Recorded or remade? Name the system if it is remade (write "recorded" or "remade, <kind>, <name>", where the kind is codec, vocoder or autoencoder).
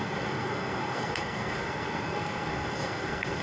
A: remade, codec, SNAC